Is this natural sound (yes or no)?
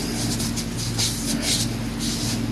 yes